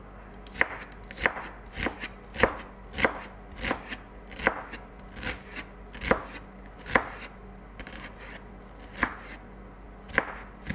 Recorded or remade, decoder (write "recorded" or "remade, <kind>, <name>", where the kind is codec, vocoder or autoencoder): recorded